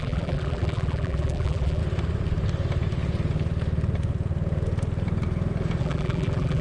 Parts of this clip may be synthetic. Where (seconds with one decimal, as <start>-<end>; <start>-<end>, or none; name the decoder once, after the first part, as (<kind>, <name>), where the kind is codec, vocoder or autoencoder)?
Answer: 0.0-1.8 (vocoder, BigVGAN v2); 5.8-6.6